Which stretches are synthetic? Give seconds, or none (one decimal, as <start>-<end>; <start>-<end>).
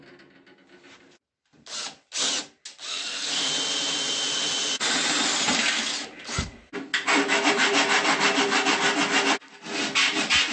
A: 2.9-3.5